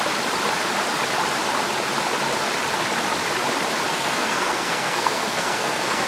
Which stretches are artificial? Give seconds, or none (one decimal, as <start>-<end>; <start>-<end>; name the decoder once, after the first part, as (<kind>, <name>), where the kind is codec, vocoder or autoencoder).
3.9-6.1 (codec, SNAC)